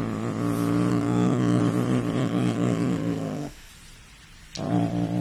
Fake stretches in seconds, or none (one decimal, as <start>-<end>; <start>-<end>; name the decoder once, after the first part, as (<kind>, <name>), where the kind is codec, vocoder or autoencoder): 0.9-1.6 (autoencoder, DAC-VAE); 2.2-3.7